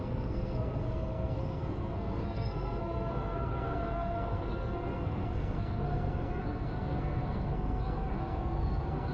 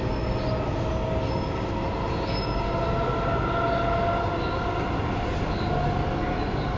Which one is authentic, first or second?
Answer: second